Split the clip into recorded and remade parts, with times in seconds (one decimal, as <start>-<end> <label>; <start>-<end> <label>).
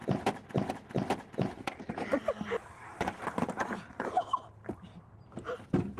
0.0-0.7 recorded; 0.7-4.6 remade; 4.6-6.0 recorded